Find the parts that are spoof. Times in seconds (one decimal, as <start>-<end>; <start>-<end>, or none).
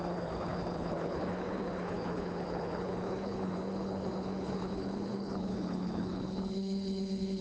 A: 0.0-7.4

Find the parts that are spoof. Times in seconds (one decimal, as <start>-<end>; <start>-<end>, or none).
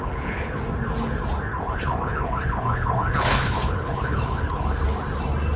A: 0.0-0.6; 1.5-4.8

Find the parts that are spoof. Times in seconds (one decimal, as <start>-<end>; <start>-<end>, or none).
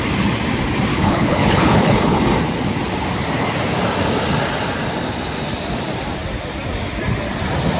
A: 0.9-2.2